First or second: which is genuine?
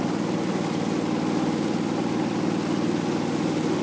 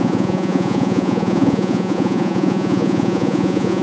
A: first